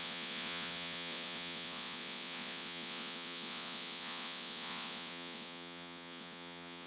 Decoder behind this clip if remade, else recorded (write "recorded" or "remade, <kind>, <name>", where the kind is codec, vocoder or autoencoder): remade, vocoder, Vocos